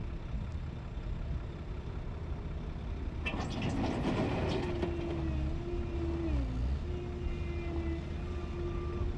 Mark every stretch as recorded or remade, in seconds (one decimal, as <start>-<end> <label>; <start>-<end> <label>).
0.0-9.2 recorded